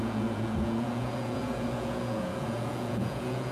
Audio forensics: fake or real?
fake